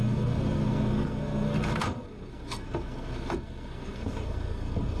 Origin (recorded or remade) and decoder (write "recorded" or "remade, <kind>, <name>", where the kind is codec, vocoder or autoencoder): remade, codec, SNAC